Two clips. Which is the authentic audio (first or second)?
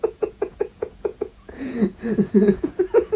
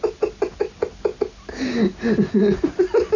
second